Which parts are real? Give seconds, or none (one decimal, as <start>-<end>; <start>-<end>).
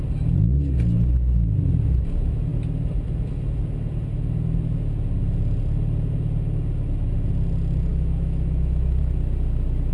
0.0-7.9; 9.0-9.9